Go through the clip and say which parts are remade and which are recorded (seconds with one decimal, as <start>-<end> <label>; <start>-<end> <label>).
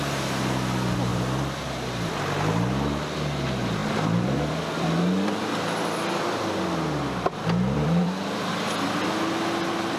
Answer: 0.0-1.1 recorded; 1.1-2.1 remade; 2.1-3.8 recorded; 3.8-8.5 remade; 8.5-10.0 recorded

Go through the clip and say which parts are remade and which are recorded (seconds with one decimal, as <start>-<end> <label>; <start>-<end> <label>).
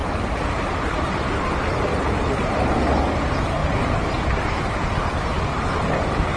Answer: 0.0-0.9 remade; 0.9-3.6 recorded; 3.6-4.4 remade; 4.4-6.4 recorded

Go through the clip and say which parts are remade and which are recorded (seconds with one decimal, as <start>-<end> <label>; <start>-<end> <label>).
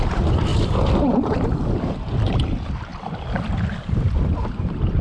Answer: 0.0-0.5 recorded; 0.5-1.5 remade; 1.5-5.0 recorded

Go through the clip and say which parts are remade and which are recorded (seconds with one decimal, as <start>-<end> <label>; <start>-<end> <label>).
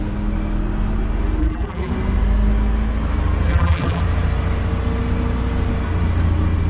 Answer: 0.0-1.4 recorded; 1.4-1.9 remade; 1.9-3.5 recorded; 3.5-4.0 remade; 4.0-6.7 recorded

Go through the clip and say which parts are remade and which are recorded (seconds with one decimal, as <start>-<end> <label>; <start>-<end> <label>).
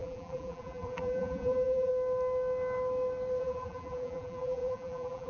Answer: 0.0-1.9 remade; 1.9-3.4 recorded; 3.4-5.3 remade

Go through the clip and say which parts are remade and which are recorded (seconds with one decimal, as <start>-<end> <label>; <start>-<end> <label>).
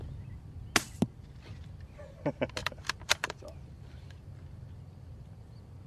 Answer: 0.0-2.6 recorded; 2.6-4.3 remade; 4.3-5.9 recorded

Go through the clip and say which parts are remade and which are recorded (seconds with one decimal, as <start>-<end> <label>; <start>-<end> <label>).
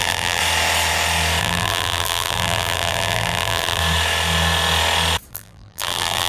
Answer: 0.0-0.4 remade; 0.4-1.4 recorded; 1.4-3.8 remade; 3.8-5.3 recorded; 5.3-6.3 remade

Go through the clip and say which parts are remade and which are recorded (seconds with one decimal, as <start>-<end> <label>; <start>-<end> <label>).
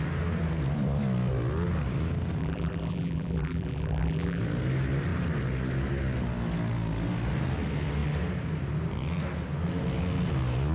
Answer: 0.0-2.4 recorded; 2.4-4.4 remade; 4.4-10.7 recorded